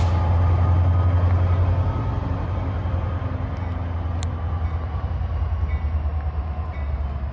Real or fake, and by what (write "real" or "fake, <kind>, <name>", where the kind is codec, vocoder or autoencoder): real